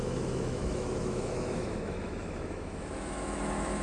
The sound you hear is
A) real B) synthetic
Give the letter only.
B